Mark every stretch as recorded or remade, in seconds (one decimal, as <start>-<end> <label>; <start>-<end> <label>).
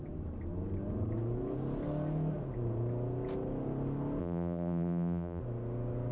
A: 0.0-4.2 recorded; 4.2-5.4 remade; 5.4-6.1 recorded